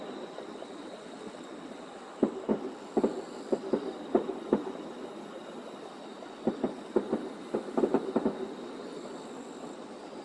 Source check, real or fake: real